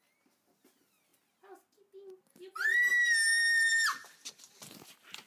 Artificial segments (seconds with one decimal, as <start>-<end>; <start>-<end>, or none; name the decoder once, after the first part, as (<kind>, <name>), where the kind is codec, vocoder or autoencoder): none